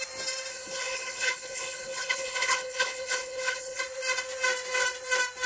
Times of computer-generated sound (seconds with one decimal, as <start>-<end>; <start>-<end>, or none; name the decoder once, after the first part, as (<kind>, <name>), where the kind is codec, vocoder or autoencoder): 0.5-3.8 (codec, HILCodec)